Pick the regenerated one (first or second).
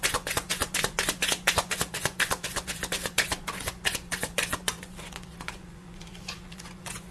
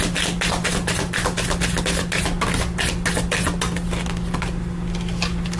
first